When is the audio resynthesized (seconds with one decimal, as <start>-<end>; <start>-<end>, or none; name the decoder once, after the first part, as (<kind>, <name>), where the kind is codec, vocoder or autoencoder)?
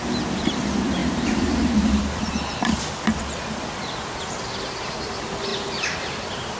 1.0-3.2 (vocoder, BigVGAN v2); 5.5-6.6